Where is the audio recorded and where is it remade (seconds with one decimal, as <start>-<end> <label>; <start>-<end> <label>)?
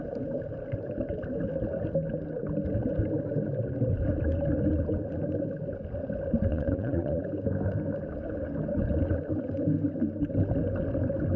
0.0-6.5 recorded; 6.5-7.2 remade; 7.2-11.4 recorded